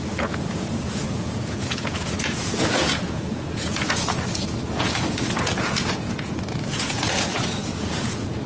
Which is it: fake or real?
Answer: fake